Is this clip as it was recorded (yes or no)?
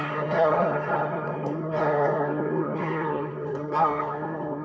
no